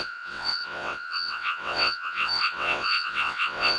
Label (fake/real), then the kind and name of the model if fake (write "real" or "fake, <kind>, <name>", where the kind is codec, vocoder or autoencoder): fake, vocoder, WaveNeXt